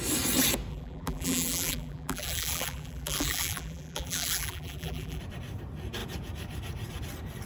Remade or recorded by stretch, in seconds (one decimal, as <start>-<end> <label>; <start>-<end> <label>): 0.0-0.7 recorded; 0.7-5.2 remade; 5.2-7.5 recorded